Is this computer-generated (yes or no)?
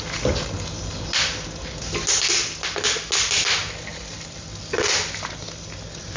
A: no